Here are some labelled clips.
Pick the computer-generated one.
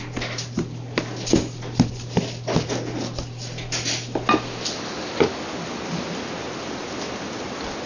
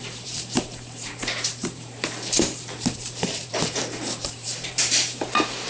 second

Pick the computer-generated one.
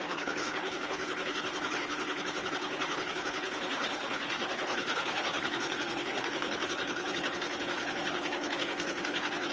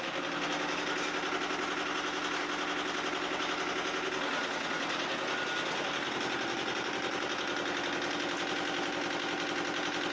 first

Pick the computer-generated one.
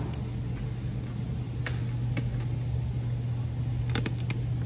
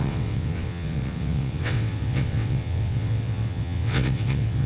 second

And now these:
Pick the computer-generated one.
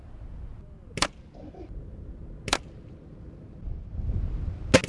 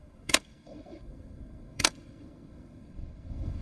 second